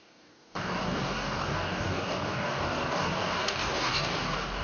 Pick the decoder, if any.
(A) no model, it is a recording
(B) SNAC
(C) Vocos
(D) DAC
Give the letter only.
D